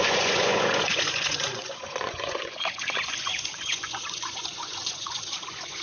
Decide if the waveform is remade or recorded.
remade